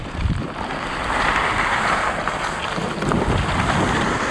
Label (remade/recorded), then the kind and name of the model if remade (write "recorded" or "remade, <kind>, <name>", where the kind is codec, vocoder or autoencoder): recorded